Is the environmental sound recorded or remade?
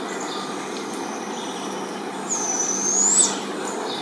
recorded